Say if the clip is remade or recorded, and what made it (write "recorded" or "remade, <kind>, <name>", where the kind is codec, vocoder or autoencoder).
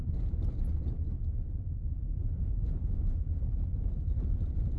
remade, vocoder, BigVGAN v2